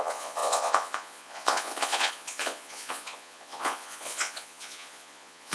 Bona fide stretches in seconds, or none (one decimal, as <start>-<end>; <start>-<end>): none